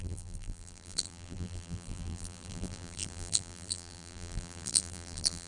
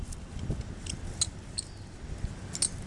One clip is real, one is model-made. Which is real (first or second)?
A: second